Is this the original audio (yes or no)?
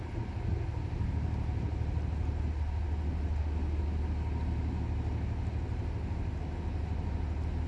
yes